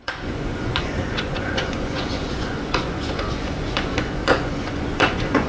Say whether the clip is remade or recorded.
remade